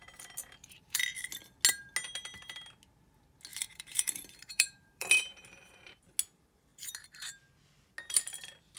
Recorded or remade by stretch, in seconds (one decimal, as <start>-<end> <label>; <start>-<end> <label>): 0.0-0.4 recorded; 0.4-1.0 remade; 1.0-3.5 recorded; 3.5-6.0 remade; 6.0-8.8 recorded